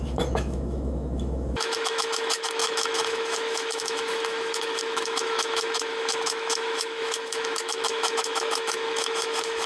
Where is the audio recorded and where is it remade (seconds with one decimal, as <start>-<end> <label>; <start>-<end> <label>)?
0.0-9.7 remade